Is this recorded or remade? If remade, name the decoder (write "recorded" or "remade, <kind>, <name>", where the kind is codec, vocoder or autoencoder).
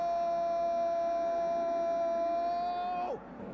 recorded